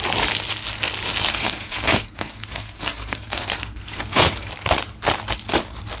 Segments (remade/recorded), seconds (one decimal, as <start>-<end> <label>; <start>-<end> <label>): 0.0-1.3 recorded; 1.3-4.5 remade; 4.5-6.0 recorded

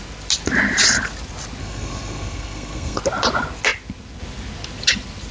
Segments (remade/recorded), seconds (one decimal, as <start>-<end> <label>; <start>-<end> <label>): 0.0-1.6 recorded; 1.6-3.0 remade; 3.0-5.3 recorded

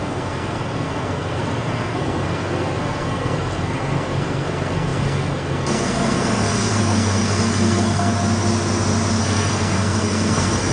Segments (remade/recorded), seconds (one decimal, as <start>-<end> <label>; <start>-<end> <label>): 0.0-8.1 remade; 8.1-9.2 recorded; 9.2-10.7 remade

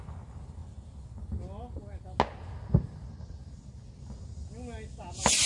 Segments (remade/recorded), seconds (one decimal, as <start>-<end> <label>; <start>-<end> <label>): 0.0-5.5 recorded

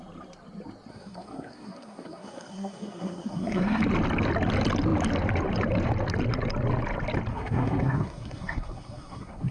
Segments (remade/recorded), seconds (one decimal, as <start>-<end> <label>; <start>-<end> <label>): 0.0-0.9 recorded; 0.9-3.8 remade; 3.8-7.3 recorded; 7.3-9.5 remade

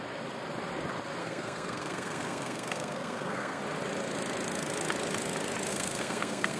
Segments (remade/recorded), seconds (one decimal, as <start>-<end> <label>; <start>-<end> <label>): 0.0-1.2 recorded; 1.2-3.6 remade; 3.6-5.7 recorded; 5.7-6.6 remade

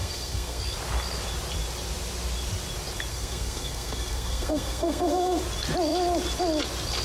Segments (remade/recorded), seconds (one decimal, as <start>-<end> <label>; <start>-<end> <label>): 0.0-0.6 remade; 0.6-3.1 recorded; 3.1-5.4 remade; 5.4-7.0 recorded